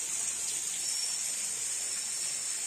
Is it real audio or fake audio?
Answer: real